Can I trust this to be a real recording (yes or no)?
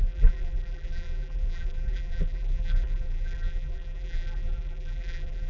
no